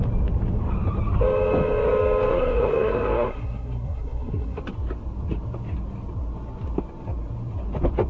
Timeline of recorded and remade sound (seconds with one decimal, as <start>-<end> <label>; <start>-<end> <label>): 0.0-2.3 recorded; 2.3-4.6 remade; 4.6-8.1 recorded